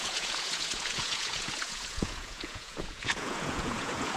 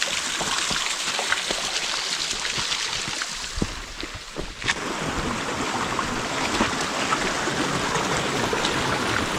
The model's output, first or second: first